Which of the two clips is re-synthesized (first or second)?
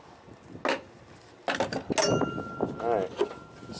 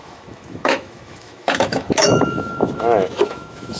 second